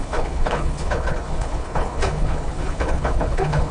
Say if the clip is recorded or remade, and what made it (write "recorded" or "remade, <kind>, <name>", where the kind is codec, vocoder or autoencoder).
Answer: remade, codec, HILCodec